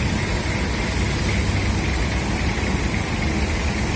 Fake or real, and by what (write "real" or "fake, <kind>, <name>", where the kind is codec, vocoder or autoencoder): real